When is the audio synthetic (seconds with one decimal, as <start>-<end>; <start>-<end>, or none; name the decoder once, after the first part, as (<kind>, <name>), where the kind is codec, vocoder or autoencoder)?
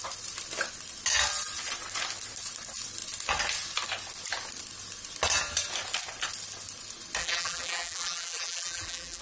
7.2-9.2 (vocoder, BigVGAN v2)